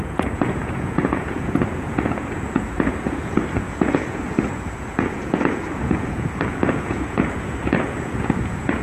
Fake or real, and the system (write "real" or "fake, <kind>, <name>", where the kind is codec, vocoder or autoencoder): fake, vocoder, Vocos